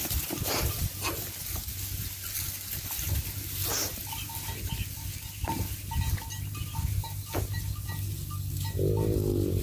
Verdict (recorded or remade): recorded